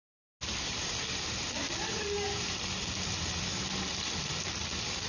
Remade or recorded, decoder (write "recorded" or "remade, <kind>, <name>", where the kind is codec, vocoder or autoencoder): recorded